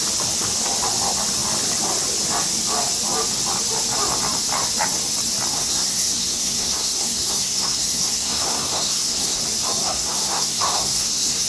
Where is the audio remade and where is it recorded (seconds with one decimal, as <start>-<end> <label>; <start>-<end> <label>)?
0.0-5.5 recorded; 5.5-9.4 remade; 9.4-9.8 recorded; 9.8-11.5 remade